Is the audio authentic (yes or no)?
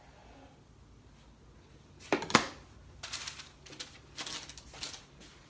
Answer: yes